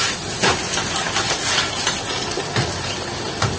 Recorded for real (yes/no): yes